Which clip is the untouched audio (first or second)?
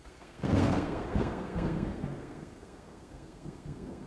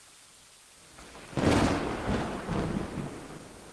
second